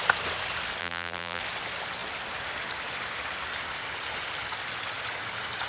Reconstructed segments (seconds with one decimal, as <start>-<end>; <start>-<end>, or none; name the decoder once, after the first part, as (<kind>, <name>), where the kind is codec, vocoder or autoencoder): 0.8-1.4 (vocoder, BigVGAN v2)